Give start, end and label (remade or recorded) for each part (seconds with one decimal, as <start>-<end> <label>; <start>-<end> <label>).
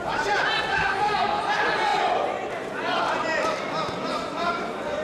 0.0-0.7 recorded; 0.7-1.4 remade; 1.4-5.0 recorded